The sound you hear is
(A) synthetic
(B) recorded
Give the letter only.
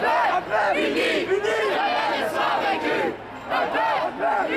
B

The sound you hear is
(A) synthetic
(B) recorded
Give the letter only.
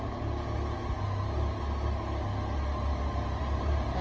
B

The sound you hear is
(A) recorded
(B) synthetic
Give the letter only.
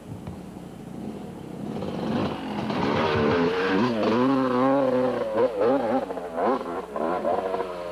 A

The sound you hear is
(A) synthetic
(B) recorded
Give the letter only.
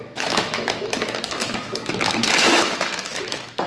A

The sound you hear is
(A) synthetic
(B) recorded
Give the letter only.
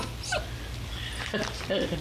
B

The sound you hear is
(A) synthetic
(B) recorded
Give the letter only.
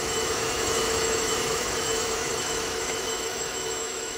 A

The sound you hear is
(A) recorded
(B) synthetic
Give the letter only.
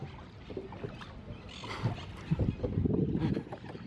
A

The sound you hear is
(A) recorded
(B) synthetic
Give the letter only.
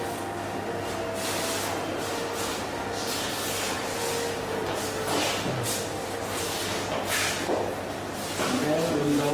A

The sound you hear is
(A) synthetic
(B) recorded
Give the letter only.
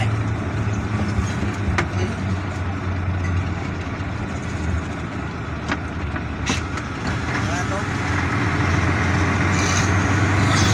B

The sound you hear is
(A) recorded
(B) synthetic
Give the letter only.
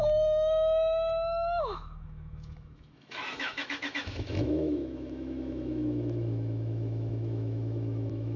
B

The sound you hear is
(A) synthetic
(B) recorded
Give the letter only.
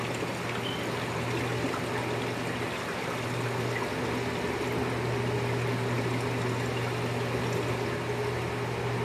B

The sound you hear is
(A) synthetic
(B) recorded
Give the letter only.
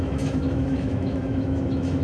A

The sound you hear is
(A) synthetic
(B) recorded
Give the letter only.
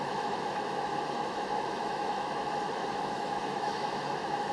A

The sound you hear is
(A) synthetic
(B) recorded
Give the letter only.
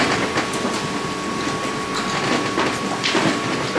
B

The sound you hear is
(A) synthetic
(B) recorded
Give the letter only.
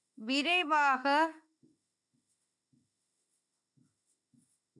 A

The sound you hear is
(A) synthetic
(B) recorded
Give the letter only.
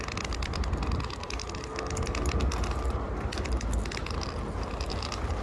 B